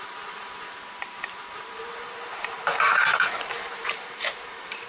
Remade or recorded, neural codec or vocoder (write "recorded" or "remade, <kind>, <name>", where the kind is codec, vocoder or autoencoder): remade, vocoder, BigVGAN v2